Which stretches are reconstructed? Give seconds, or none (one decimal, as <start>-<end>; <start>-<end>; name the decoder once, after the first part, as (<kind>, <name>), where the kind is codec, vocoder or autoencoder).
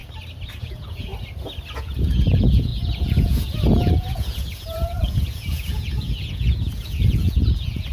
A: 0.6-1.1 (vocoder, Vocos); 1.8-7.9